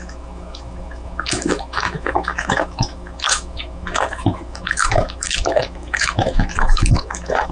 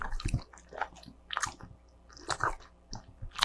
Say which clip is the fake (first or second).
first